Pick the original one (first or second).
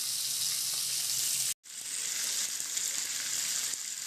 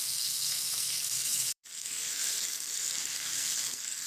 first